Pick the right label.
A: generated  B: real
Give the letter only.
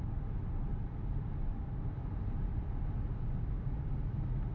A